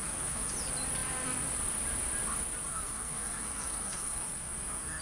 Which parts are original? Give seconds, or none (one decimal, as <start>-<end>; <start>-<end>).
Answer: 0.5-2.7